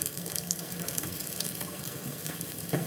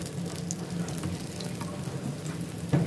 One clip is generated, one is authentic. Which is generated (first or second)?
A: first